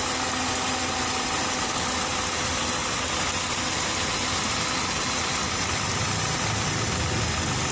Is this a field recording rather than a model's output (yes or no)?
yes